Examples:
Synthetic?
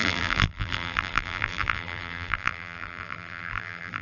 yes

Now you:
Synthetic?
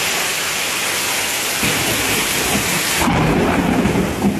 no